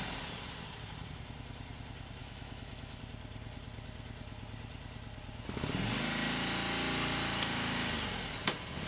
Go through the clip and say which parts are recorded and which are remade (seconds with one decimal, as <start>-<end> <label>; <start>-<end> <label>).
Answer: 0.0-2.2 recorded; 2.2-3.0 remade; 3.0-8.9 recorded